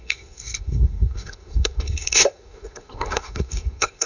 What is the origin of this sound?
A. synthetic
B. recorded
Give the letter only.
A